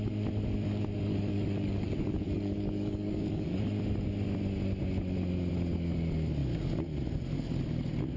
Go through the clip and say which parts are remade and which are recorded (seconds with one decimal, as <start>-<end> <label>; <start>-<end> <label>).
0.0-1.1 recorded; 1.1-3.6 remade; 3.6-8.2 recorded